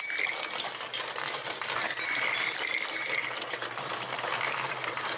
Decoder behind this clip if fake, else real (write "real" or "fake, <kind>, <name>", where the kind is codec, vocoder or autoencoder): fake, vocoder, BigVGAN v2